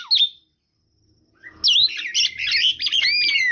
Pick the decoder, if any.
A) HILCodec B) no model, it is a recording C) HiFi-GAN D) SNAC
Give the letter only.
B